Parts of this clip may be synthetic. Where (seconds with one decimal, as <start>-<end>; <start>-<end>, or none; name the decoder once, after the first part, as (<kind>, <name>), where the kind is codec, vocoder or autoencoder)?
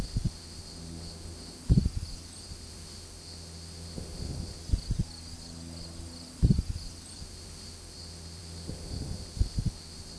0.0-1.6 (autoencoder, DAC-VAE); 2.4-4.6; 7.2-10.2